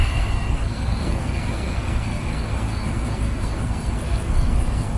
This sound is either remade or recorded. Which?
remade